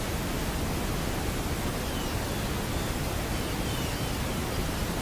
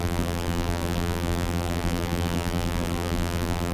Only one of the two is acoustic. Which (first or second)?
first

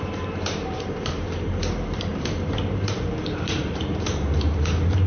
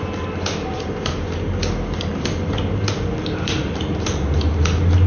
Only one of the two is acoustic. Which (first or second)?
second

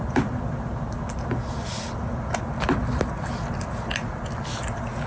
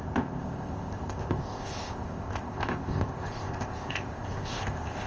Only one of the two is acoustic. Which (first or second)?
first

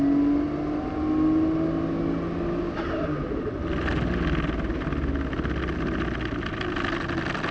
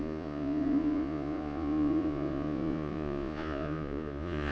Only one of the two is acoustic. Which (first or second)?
first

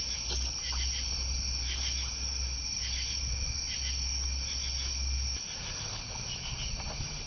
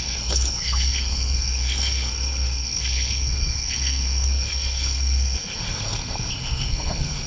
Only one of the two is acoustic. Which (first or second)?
first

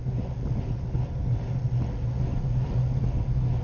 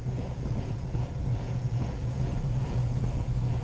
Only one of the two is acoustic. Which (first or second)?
first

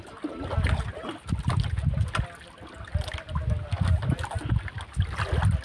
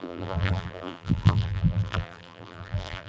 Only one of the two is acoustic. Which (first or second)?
first